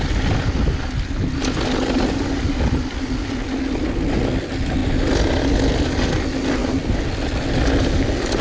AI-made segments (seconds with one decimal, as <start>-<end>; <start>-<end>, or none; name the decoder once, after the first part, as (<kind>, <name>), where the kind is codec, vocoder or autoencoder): none